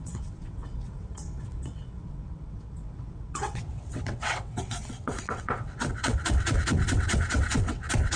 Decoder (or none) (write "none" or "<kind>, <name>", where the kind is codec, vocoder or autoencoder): vocoder, WaveNeXt